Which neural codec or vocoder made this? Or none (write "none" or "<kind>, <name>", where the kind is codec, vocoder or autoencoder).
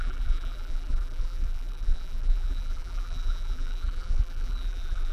vocoder, BigVGAN v2